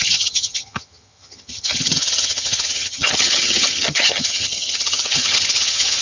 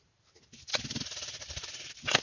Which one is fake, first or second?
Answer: first